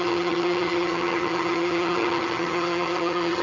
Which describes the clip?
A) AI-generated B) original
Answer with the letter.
A